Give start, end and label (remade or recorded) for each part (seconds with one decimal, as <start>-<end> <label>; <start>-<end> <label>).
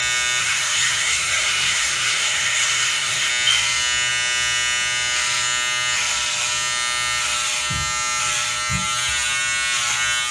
0.0-0.4 recorded; 0.4-3.3 remade; 3.3-10.3 recorded